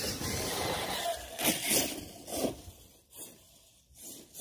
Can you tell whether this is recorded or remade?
recorded